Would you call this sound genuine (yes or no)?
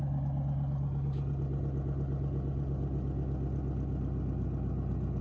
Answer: yes